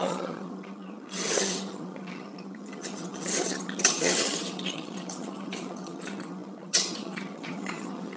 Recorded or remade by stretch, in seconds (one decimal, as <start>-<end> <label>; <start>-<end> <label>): 0.0-8.2 remade

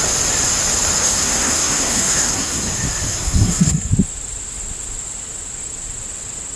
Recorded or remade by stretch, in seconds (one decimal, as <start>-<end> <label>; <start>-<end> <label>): 0.0-1.0 recorded; 1.0-2.7 remade; 2.7-3.1 recorded; 3.1-3.9 remade; 3.9-6.6 recorded